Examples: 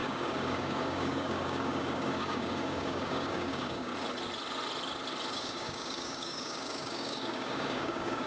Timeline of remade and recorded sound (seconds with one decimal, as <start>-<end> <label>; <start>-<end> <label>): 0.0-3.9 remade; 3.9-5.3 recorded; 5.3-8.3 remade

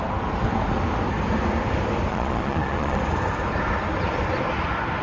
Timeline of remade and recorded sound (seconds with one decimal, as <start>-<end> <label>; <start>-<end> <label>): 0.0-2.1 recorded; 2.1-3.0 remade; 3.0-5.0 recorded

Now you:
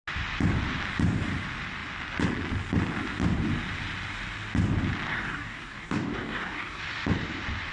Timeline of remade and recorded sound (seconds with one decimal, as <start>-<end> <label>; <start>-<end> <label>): 0.0-5.1 recorded; 5.1-6.8 remade; 6.8-7.7 recorded

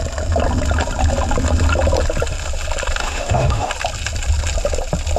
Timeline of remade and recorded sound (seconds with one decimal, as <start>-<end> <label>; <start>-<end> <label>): 0.0-3.0 recorded; 3.0-3.7 remade; 3.7-5.2 recorded